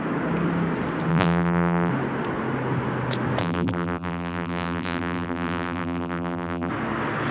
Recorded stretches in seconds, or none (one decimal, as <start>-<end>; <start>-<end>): 0.0-1.1; 1.9-3.4; 6.7-7.3